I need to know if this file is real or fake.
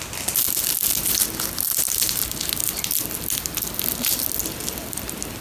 real